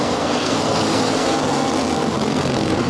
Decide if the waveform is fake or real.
fake